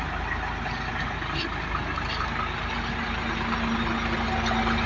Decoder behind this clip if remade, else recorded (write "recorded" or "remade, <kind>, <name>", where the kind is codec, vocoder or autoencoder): recorded